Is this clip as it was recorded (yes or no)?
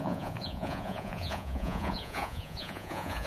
no